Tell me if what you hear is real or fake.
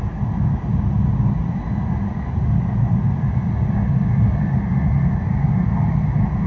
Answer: real